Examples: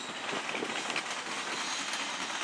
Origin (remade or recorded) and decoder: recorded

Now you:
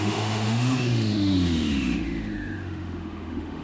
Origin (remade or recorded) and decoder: remade, autoencoder, DAC-VAE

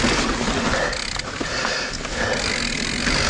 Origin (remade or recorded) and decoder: recorded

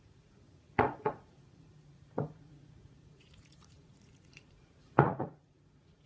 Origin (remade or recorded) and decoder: remade, vocoder, Vocos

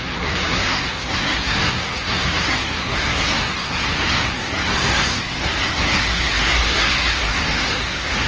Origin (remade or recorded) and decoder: remade, codec, SNAC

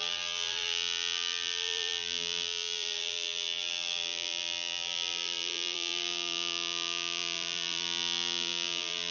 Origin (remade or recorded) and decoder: remade, vocoder, BigVGAN v2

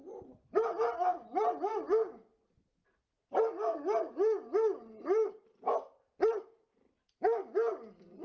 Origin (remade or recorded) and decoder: recorded